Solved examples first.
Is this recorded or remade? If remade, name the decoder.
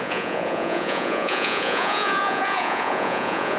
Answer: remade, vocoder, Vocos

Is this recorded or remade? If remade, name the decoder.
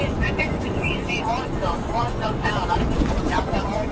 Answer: remade, vocoder, Vocos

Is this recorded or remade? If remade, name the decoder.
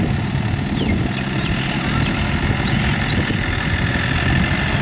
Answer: recorded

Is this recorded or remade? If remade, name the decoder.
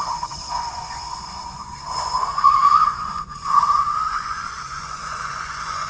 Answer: remade, vocoder, Vocos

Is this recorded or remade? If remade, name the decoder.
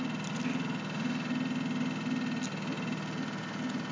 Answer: recorded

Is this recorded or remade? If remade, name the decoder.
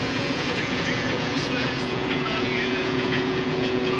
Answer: remade, vocoder, Vocos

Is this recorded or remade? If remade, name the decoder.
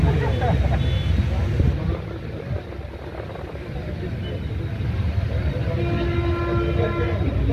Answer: recorded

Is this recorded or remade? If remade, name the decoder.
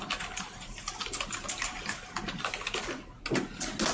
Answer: recorded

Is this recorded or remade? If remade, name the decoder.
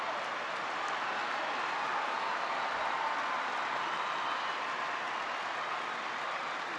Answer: recorded